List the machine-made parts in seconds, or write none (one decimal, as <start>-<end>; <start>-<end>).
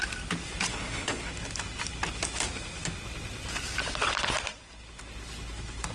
0.7-1.3